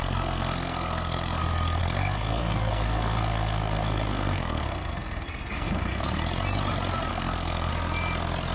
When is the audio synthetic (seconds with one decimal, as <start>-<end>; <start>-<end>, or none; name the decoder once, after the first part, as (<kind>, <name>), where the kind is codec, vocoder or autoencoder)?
0.0-1.4 (codec, SNAC); 1.8-6.0; 7.1-7.7